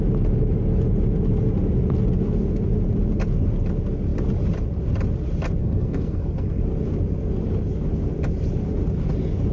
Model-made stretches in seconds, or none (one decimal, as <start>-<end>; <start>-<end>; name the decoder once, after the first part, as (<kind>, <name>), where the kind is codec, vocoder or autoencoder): 5.6-6.6 (codec, SNAC)

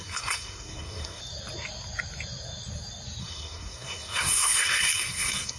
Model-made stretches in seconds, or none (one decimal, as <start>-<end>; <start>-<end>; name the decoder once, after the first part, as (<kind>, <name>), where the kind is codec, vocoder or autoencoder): 0.0-1.2 (codec, SNAC); 3.2-5.6

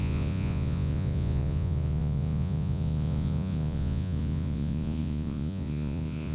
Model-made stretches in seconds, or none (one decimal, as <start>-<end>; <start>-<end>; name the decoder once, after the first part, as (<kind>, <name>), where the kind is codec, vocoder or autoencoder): 0.0-6.3 (vocoder, Vocos)

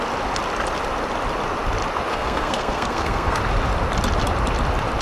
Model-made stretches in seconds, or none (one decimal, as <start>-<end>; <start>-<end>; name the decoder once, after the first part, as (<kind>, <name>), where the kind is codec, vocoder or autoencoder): 2.1-3.4 (codec, SNAC)